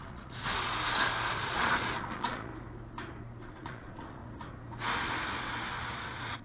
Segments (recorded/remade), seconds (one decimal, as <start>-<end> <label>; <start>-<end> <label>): 0.0-0.7 remade; 0.7-1.3 recorded; 1.3-2.5 remade; 2.5-3.5 recorded; 3.5-4.2 remade; 4.2-5.9 recorded; 5.9-6.4 remade